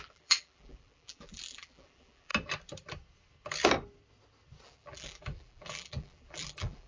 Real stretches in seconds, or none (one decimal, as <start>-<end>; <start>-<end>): 2.3-4.6